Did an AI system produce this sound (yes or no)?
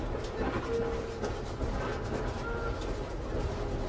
no